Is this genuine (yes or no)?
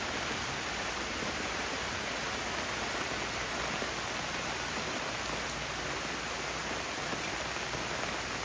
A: yes